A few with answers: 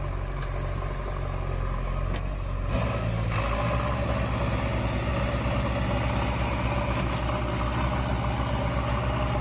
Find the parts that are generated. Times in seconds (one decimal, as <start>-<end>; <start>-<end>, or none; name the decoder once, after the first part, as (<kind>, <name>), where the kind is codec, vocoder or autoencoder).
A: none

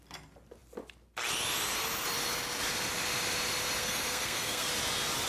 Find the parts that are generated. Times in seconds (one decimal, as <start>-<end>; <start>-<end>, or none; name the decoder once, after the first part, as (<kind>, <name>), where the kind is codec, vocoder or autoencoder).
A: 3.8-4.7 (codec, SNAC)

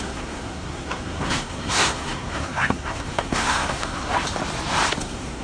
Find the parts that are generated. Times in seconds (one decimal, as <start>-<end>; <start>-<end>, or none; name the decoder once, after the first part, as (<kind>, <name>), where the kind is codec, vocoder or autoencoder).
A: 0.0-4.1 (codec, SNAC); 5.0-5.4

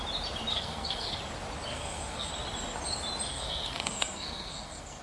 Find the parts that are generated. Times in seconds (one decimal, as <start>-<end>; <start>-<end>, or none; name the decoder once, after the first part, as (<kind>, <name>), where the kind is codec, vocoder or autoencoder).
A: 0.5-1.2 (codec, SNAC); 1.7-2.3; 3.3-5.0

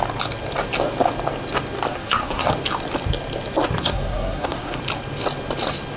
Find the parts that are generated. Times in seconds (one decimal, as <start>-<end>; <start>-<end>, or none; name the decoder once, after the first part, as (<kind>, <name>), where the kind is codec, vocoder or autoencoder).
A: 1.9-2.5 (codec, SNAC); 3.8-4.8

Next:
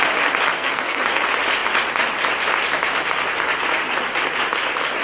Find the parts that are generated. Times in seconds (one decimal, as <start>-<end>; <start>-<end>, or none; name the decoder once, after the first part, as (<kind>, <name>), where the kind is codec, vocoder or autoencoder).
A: 0.5-1.0 (codec, SNAC)

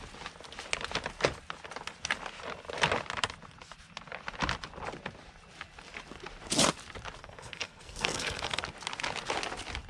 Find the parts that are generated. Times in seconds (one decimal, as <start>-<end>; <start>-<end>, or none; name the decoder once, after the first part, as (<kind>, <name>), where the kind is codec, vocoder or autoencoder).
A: 7.2-8.6 (codec, SNAC)

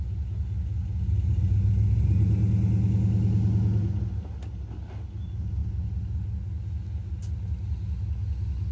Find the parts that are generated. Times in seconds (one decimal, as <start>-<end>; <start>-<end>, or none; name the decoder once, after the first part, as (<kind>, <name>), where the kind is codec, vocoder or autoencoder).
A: none